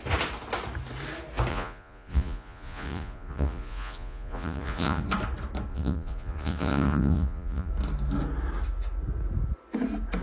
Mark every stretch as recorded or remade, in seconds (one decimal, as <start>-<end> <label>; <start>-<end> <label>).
0.0-1.5 recorded; 1.5-5.0 remade; 5.0-5.7 recorded; 5.7-7.7 remade; 7.7-10.2 recorded